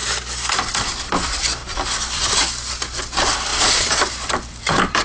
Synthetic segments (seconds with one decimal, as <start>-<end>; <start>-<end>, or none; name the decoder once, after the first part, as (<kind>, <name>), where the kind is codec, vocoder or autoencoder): 0.0-0.8 (vocoder, BigVGAN v2); 1.6-2.4; 3.5-5.0